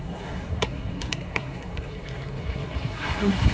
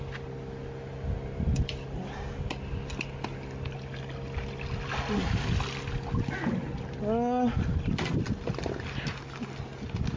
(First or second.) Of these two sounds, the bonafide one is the second